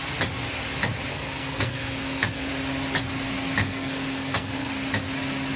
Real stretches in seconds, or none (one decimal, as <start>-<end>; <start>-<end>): 0.0-1.1; 2.5-3.6; 4.7-5.6